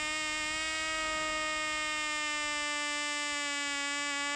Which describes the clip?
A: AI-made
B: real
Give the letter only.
B